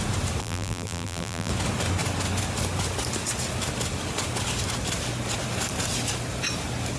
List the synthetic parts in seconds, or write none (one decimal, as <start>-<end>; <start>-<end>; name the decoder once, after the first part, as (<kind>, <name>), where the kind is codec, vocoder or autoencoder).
0.4-1.5 (vocoder, BigVGAN v2)